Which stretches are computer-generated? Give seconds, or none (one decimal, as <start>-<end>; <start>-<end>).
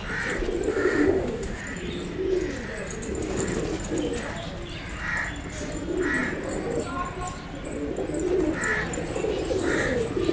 0.7-1.6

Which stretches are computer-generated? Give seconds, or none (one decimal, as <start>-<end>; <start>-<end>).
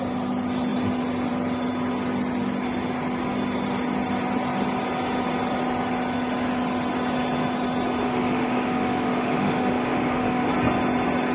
8.0-10.5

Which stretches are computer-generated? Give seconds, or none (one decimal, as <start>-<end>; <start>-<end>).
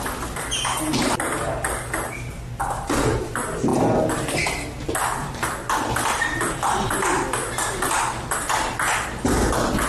none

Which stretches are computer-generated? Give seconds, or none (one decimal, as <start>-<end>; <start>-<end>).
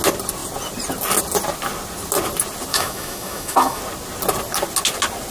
2.7-3.8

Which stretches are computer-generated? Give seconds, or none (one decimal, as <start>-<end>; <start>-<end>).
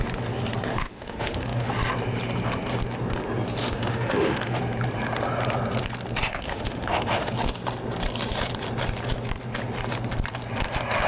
0.7-1.7; 3.6-4.6; 6.3-7.3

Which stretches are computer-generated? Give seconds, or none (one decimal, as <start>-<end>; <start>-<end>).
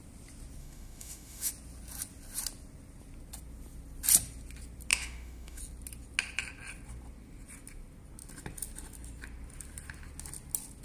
0.6-1.5; 4.9-5.6